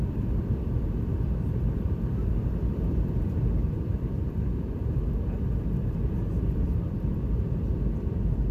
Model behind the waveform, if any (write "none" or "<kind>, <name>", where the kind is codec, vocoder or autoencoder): vocoder, BigVGAN v2